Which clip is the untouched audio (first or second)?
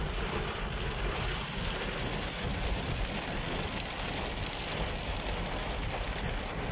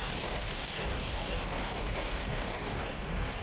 first